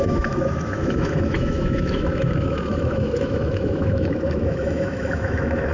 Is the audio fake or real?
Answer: fake